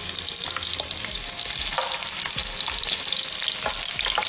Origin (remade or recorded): recorded